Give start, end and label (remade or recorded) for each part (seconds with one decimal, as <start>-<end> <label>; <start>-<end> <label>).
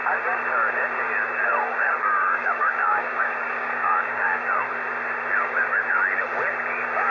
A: 0.0-1.5 recorded; 1.5-4.7 remade; 4.7-5.4 recorded; 5.4-6.0 remade; 6.0-7.1 recorded